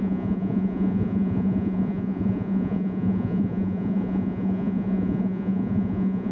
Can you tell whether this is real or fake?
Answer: fake